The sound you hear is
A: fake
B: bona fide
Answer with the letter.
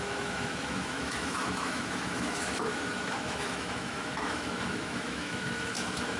A